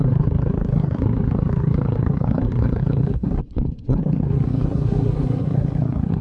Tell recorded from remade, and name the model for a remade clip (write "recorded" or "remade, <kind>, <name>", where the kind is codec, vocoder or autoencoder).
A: remade, codec, SNAC